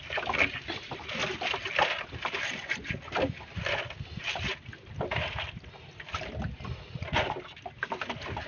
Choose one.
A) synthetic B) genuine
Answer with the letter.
B